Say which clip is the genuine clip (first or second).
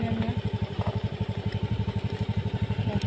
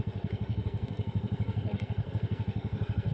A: first